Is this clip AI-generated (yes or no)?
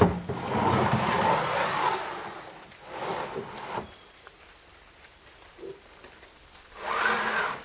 no